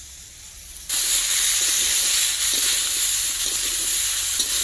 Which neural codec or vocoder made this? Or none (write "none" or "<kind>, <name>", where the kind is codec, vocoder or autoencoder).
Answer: none